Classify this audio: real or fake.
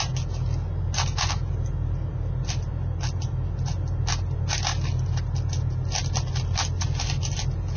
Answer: real